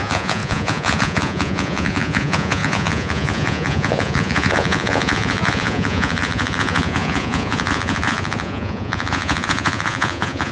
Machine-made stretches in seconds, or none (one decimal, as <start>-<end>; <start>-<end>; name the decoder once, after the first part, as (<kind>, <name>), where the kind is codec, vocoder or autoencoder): 0.0-10.5 (vocoder, Vocos)